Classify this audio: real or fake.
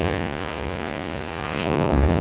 fake